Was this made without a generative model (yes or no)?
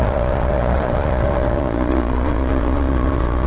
no